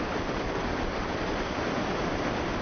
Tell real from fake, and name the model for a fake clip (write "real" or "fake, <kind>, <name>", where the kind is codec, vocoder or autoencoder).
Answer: real